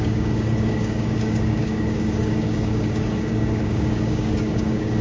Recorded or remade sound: remade